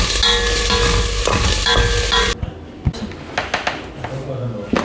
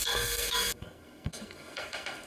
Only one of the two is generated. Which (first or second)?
second